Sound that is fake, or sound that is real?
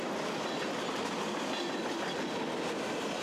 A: real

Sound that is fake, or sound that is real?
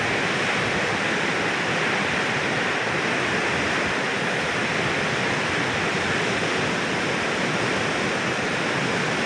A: real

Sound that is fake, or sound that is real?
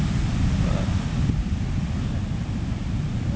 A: real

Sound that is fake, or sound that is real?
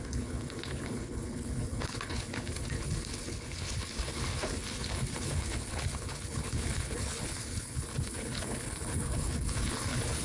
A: fake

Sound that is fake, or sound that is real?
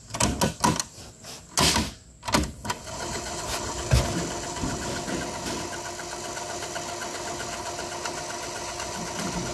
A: real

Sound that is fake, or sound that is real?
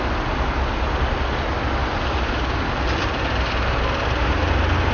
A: real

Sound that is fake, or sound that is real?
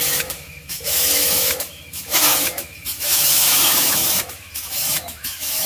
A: fake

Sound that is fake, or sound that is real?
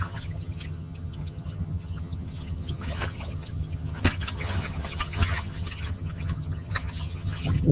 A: fake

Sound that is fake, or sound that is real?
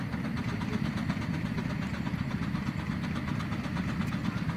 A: real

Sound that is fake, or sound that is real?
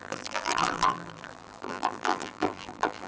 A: fake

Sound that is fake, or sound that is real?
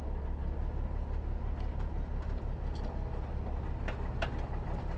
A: real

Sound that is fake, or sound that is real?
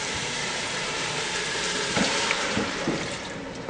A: fake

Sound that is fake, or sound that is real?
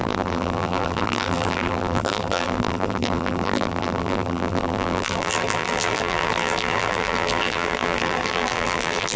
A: fake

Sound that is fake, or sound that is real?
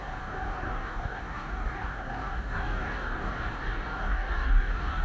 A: fake